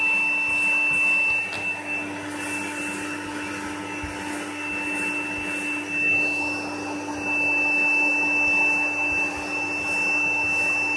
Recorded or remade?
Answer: recorded